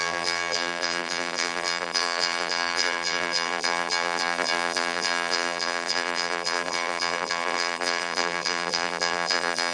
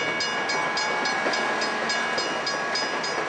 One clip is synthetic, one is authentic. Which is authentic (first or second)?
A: second